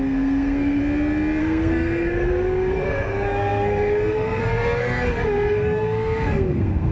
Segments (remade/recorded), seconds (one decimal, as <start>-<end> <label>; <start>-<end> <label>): 0.0-0.8 remade; 0.8-1.4 recorded; 1.4-6.9 remade